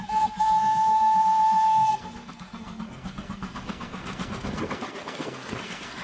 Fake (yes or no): yes